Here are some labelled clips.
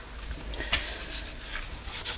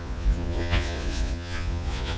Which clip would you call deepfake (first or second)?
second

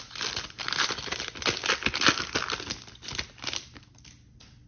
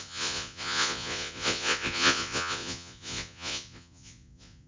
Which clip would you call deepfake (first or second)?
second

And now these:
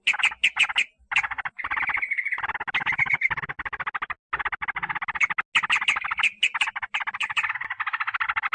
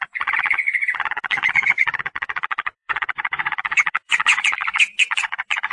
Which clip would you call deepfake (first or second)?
second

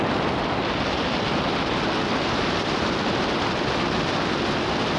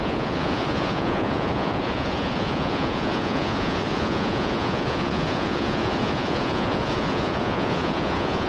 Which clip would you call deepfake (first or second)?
second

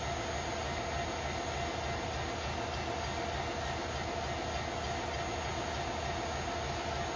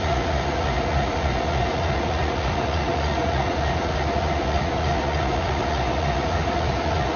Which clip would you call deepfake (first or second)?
second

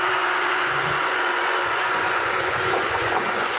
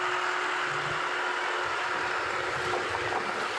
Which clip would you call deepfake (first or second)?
first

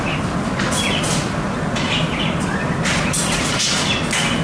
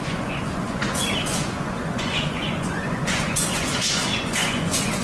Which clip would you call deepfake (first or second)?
second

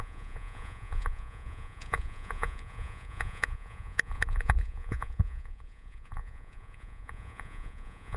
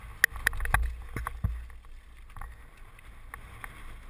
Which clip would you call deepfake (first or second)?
first